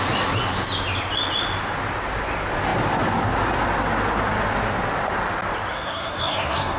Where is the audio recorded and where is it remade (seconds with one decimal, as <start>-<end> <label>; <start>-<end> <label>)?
0.0-5.7 recorded; 5.7-6.8 remade